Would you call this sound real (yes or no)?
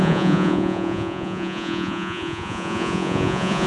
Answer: no